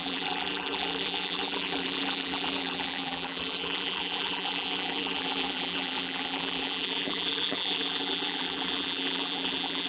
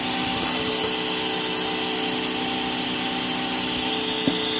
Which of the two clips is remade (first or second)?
first